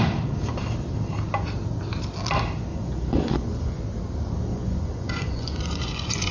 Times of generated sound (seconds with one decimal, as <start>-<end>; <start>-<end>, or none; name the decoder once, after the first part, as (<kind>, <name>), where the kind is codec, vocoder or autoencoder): 2.7-3.8 (vocoder, Vocos); 4.5-6.3